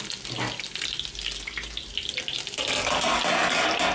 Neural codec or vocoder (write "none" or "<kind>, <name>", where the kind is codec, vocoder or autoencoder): none